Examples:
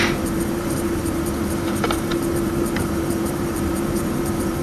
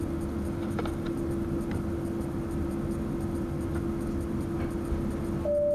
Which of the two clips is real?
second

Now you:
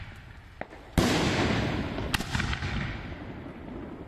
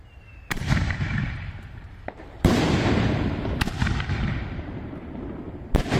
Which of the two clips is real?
first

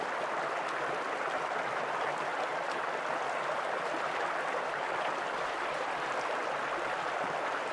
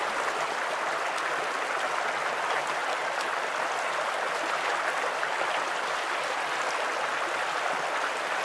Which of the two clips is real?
second